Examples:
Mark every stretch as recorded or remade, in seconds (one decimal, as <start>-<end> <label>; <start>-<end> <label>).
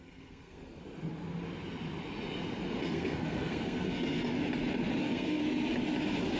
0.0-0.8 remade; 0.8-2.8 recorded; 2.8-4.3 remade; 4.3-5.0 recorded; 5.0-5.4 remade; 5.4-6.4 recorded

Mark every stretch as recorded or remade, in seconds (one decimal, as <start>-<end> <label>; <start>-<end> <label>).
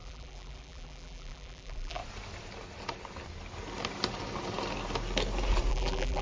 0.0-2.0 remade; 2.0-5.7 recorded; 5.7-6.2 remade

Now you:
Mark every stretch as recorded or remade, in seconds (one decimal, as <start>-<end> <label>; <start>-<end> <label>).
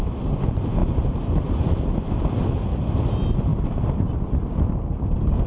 0.0-5.5 recorded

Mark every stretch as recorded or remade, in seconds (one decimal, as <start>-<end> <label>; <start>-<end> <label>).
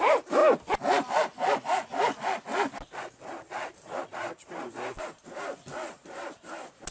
0.0-0.4 remade; 0.4-3.0 recorded; 3.0-5.2 remade; 5.2-5.9 recorded; 5.9-6.9 remade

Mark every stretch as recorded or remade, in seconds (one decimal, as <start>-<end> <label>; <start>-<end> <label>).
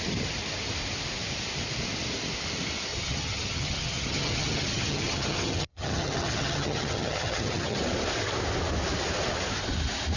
0.0-2.9 recorded; 2.9-7.8 remade; 7.8-10.2 recorded